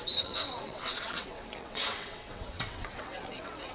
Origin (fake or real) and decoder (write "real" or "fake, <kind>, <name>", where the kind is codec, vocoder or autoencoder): fake, vocoder, WaveNeXt